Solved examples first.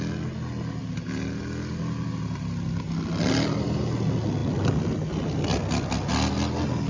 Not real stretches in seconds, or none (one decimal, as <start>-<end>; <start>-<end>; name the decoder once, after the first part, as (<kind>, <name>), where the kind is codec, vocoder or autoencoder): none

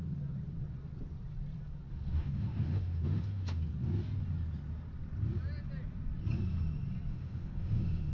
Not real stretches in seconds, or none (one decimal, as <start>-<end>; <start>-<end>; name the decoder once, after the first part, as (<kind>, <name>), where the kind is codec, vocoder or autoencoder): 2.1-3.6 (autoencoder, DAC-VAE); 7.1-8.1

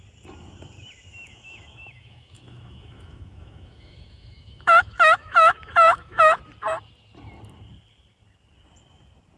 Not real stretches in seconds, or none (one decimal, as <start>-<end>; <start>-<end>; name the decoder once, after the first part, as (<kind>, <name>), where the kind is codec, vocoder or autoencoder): 1.1-6.4 (autoencoder, DAC-VAE)

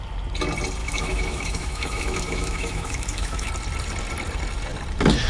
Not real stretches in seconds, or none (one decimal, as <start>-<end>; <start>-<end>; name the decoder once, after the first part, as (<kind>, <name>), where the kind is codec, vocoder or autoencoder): 0.8-3.5 (autoencoder, DAC-VAE)

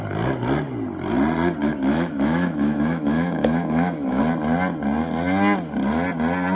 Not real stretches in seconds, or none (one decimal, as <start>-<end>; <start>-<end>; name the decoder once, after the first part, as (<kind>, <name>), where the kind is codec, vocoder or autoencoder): 1.6-4.2 (autoencoder, DAC-VAE)